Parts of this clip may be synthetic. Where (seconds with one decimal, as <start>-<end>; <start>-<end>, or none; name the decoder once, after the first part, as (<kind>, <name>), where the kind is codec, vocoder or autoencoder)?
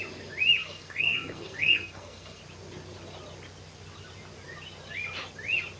0.6-2.4 (codec, SNAC)